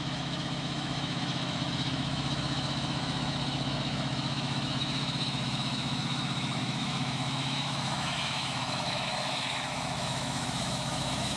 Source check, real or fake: fake